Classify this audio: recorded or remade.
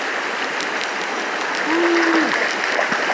recorded